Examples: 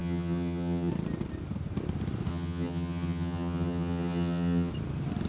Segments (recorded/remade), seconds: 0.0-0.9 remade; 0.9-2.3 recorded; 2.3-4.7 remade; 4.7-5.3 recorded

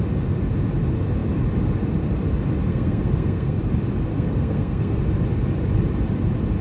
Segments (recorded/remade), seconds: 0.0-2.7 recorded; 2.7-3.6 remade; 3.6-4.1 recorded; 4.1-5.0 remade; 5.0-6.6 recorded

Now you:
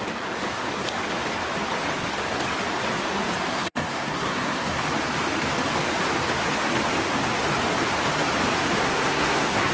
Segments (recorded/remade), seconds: 0.0-3.5 recorded; 3.5-4.8 remade; 4.8-8.8 recorded; 8.8-9.7 remade